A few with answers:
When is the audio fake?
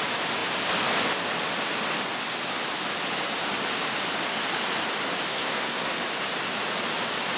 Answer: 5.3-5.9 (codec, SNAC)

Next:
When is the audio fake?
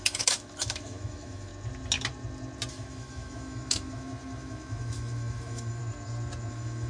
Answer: 0.0-1.5 (autoencoder, DAC-VAE); 2.7-5.8; 6.5-6.9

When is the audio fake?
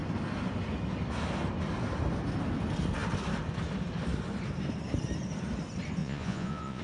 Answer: 6.0-6.8 (vocoder, Vocos)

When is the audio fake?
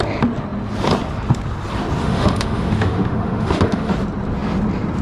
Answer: 2.0-3.9 (autoencoder, DAC-VAE)